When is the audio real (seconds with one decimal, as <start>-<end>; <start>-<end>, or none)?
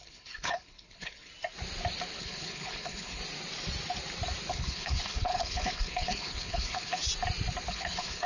1.3-2.2; 3.2-4.5; 7.0-7.7